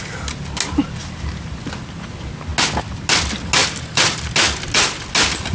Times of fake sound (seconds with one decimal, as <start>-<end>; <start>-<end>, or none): 1.0-1.6; 3.6-4.3